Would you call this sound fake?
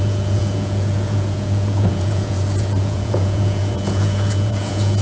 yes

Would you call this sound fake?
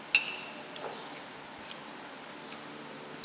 no